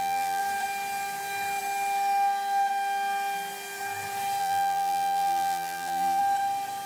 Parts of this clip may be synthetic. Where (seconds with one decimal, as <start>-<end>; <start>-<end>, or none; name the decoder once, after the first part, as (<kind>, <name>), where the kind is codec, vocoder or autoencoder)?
0.0-0.4 (vocoder, BigVGAN v2); 4.4-6.2